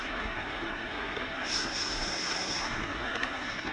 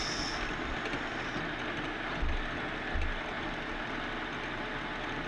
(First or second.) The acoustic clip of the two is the second